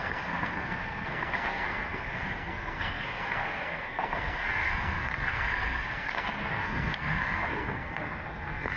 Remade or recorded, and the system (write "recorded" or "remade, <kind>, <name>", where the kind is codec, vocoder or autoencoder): remade, codec, SNAC